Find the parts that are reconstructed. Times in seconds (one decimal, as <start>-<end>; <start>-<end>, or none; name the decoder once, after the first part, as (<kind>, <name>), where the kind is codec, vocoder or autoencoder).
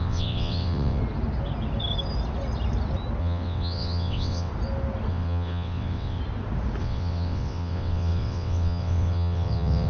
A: 0.0-1.0 (vocoder, WaveNeXt); 3.2-4.5; 5.1-6.2; 6.8-9.9